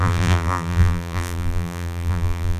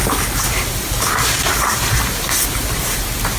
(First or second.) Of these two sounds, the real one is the second